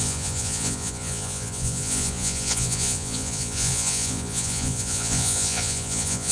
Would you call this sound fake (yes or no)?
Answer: yes